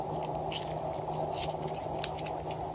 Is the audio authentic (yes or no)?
yes